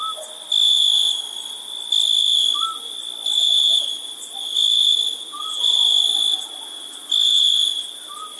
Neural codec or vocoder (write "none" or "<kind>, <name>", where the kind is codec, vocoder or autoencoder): none